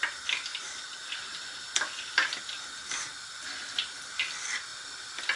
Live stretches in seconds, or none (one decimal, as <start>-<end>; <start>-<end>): 0.0-5.4